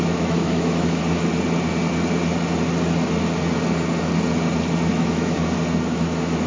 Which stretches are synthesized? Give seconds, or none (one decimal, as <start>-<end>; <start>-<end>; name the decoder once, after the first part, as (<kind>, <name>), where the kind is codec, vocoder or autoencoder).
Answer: 0.0-1.0 (autoencoder, DAC-VAE); 4.9-5.4; 5.9-6.5